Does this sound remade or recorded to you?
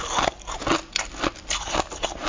recorded